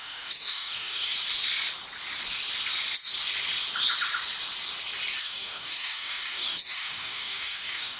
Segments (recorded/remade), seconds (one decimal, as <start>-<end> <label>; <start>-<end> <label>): 0.0-1.1 remade; 1.1-5.2 recorded; 5.2-8.0 remade